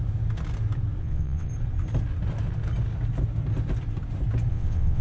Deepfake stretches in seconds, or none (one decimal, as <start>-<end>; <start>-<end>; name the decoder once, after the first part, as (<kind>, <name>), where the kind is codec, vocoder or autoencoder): 1.0-1.5 (vocoder, WaveNeXt); 4.5-5.0